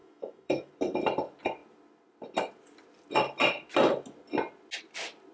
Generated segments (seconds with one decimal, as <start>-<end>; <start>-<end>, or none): 0.0-0.7